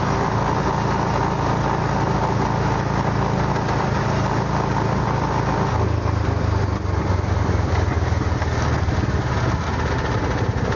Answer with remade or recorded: recorded